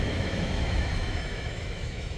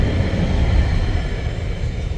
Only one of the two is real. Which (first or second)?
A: second